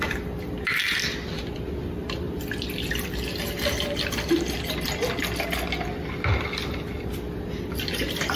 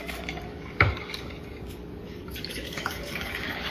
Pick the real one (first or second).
first